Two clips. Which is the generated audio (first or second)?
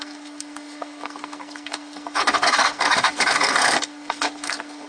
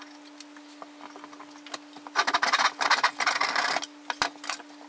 first